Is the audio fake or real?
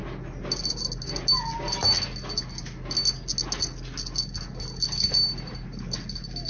real